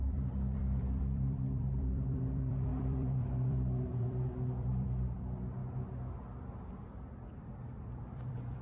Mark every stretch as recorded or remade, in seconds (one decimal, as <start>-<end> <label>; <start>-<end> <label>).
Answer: 0.0-5.6 remade; 5.6-7.4 recorded; 7.4-8.6 remade